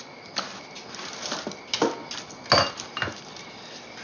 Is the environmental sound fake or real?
real